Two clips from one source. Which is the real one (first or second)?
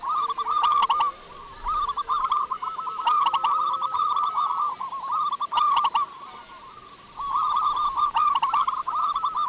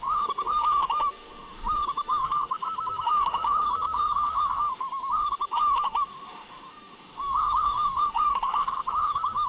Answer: first